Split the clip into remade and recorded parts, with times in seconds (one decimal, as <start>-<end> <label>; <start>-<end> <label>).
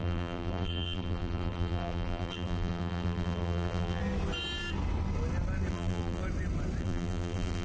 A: 0.0-4.0 remade; 4.0-5.7 recorded; 5.7-6.2 remade; 6.2-6.8 recorded; 6.8-7.6 remade